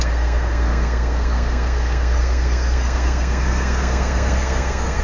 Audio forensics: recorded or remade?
remade